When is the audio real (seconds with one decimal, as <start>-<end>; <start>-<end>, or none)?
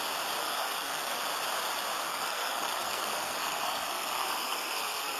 0.0-0.4; 1.2-2.1